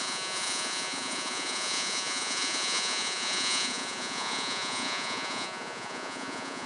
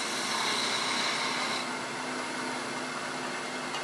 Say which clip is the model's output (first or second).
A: first